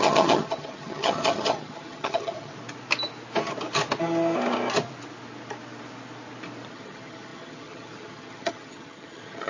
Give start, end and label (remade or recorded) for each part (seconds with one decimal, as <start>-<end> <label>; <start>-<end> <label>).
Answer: 0.0-2.5 remade; 2.5-6.7 recorded; 6.7-9.5 remade